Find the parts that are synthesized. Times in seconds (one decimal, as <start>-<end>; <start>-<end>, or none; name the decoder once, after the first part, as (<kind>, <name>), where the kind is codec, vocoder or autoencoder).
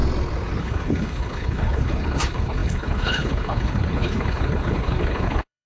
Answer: 0.6-5.7 (codec, HILCodec)